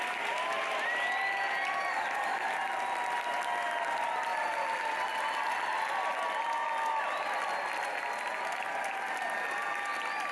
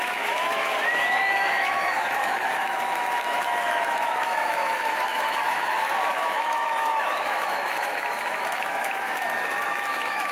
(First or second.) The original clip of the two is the first